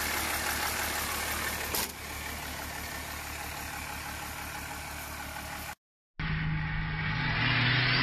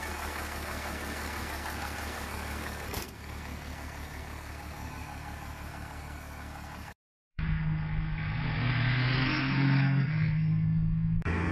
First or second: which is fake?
second